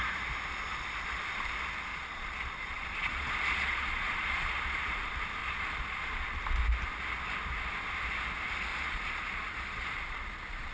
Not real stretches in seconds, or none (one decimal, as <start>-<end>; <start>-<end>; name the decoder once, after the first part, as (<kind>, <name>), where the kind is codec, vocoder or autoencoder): 1.9-4.8 (vocoder, Vocos); 5.4-6.4; 8.7-10.7